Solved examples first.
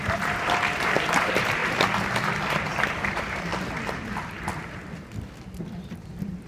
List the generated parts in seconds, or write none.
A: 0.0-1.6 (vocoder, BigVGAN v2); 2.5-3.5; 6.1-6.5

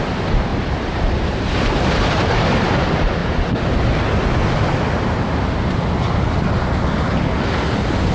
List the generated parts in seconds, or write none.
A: 0.0-3.2 (vocoder, BigVGAN v2)

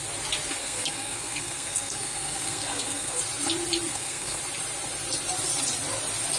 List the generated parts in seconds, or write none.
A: 0.6-3.2 (codec, SNAC); 3.9-4.4

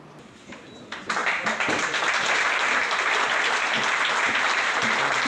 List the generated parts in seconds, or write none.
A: none

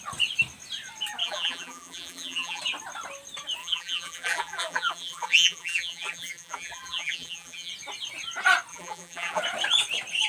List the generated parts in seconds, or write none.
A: 1.2-2.6 (vocoder, BigVGAN v2); 3.6-7.7; 8.7-9.4